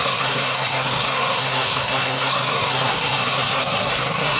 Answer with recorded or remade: remade